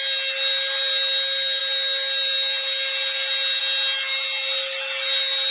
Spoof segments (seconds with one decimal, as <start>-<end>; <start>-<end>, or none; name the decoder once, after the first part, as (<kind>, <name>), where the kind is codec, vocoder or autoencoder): none

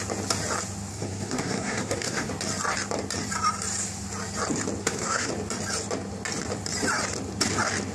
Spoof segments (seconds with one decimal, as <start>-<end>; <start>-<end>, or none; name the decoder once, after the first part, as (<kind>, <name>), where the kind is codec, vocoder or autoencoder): 0.9-2.3 (codec, SNAC); 4.8-5.3

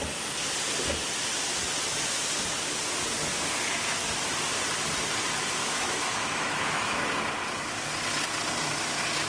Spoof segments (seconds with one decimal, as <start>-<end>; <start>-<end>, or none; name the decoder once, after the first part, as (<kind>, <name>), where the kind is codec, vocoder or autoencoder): 5.6-7.0 (autoencoder, DAC-VAE)

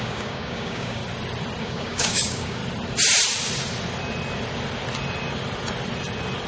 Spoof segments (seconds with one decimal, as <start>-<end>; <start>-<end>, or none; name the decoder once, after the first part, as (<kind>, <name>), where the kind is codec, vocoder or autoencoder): 0.0-1.0 (codec, DAC); 1.6-2.6

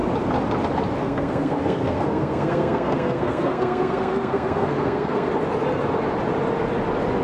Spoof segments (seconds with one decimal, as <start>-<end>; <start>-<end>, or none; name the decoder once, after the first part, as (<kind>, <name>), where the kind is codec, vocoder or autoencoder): 1.0-5.3 (codec, SNAC)

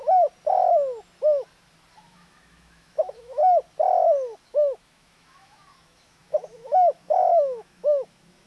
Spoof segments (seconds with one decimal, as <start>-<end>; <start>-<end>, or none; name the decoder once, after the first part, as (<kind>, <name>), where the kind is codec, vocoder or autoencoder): 2.0-3.4 (autoencoder, DAC-VAE); 4.4-8.5

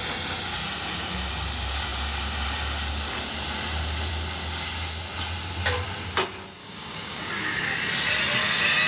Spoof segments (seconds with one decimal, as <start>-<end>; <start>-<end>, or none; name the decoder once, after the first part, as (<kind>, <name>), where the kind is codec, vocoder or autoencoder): 6.6-7.2 (codec, DAC)